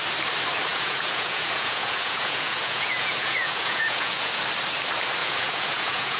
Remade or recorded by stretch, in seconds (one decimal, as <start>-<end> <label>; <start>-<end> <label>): 0.0-0.7 recorded; 0.7-4.4 remade; 4.4-5.2 recorded; 5.2-6.2 remade